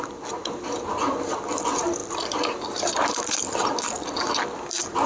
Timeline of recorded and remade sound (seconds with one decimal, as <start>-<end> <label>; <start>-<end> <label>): 0.0-5.1 recorded